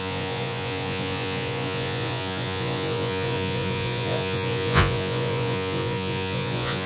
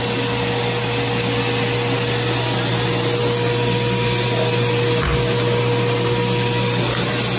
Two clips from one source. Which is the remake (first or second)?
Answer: first